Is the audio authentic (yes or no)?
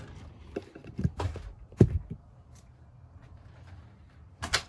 yes